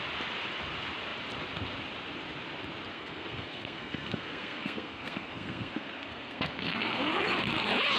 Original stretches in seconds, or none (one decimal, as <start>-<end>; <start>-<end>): 0.0-2.9; 7.0-8.0